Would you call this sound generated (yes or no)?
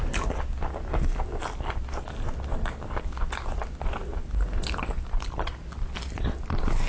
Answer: no